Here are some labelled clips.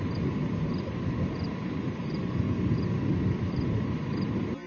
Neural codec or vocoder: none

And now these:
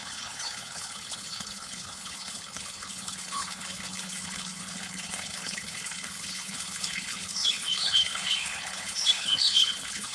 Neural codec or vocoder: codec, HILCodec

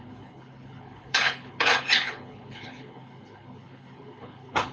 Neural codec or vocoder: codec, HILCodec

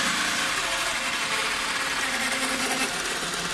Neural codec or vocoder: none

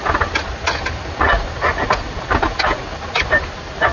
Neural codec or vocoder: none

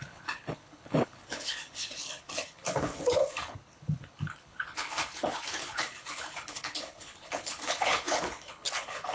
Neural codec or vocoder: codec, HILCodec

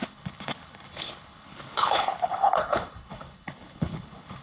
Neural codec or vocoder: codec, HILCodec